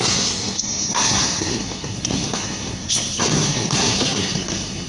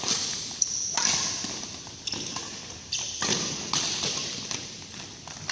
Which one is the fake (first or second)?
first